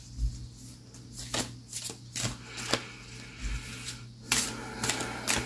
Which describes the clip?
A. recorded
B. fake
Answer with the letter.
A